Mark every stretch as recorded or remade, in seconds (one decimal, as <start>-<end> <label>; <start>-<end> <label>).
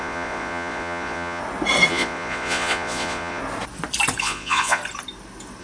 0.0-1.4 remade; 1.4-1.9 recorded; 1.9-3.4 remade; 3.4-4.2 recorded; 4.2-4.8 remade; 4.8-5.6 recorded